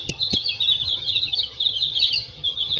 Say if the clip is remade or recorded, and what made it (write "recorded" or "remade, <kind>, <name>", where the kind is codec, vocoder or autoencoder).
remade, vocoder, HiFi-GAN